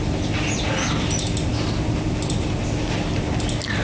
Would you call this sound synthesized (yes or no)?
no